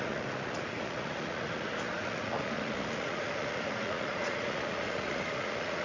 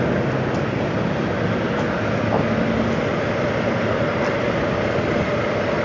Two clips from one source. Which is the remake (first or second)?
first